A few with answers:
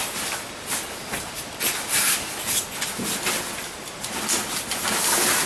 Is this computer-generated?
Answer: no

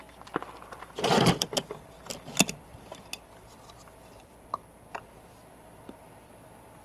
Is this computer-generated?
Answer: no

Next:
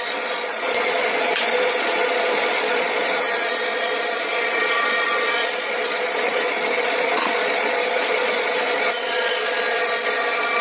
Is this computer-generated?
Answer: yes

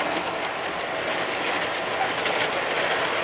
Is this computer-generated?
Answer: no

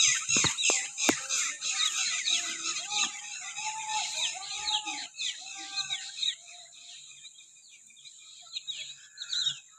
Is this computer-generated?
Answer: no